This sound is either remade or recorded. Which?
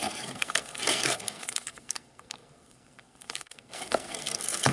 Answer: remade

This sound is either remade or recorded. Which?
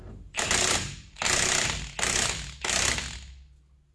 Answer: recorded